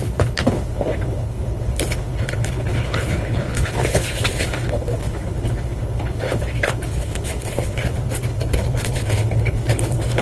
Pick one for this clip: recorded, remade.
remade